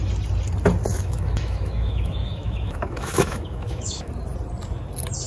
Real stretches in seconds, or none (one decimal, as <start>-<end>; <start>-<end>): 0.0-0.9; 4.1-5.3